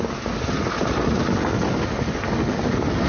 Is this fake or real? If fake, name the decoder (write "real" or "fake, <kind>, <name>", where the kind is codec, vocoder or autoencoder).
real